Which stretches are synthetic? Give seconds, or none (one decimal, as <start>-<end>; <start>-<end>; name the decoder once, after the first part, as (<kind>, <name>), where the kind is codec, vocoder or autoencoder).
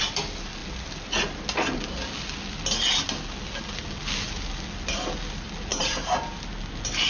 5.7-6.5 (vocoder, BigVGAN v2)